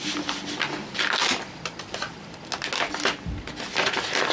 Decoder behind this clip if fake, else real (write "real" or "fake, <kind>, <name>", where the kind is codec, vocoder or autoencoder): real